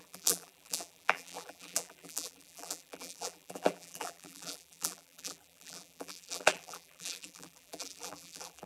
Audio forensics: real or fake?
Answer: fake